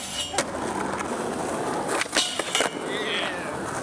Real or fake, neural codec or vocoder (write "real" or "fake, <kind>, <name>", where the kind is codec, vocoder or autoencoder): real